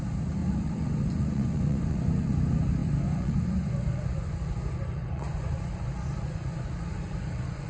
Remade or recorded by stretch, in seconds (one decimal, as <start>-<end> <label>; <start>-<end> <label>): 0.0-0.4 recorded; 0.4-2.4 remade; 2.4-2.8 recorded; 2.8-7.7 remade